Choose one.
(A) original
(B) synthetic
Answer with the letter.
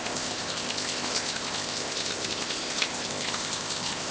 B